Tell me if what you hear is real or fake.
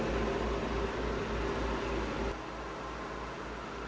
real